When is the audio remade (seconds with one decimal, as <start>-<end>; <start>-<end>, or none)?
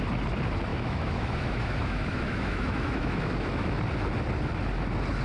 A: 0.7-3.8